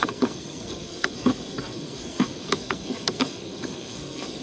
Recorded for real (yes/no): no